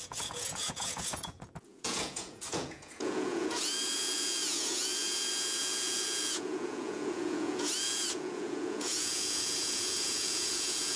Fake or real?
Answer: fake